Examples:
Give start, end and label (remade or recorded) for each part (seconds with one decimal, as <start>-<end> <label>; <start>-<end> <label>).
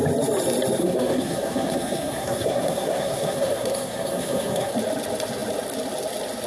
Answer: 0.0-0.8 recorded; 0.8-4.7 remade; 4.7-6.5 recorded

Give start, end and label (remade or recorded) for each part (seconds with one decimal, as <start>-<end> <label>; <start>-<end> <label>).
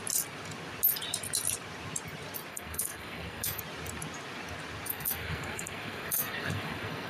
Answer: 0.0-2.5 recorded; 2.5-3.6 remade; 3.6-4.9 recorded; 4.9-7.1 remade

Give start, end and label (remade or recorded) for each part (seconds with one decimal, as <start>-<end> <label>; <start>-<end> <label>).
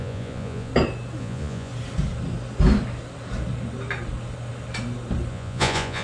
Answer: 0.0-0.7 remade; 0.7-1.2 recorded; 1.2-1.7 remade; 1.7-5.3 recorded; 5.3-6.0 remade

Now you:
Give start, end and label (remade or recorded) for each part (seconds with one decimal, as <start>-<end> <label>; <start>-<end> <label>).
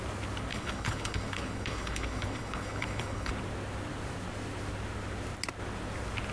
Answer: 0.0-0.5 recorded; 0.5-3.3 remade; 3.3-6.3 recorded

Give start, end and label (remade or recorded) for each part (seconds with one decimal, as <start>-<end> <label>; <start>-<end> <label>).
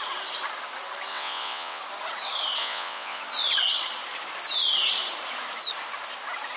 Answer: 0.0-1.1 recorded; 1.1-1.8 remade; 1.8-2.6 recorded; 2.6-3.2 remade; 3.2-6.6 recorded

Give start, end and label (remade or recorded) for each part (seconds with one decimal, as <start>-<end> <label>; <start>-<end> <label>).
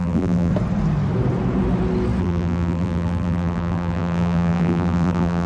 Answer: 0.0-0.5 remade; 0.5-2.2 recorded; 2.2-5.5 remade